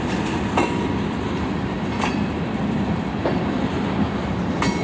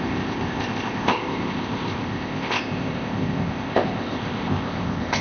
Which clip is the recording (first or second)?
first